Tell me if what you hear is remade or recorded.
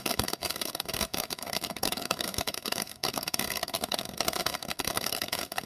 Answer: remade